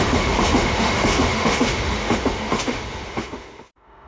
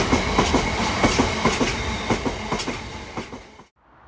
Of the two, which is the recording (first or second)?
second